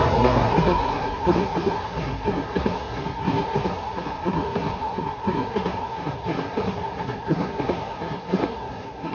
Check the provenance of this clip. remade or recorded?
remade